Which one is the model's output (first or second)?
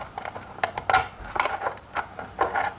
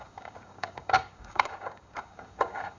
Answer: second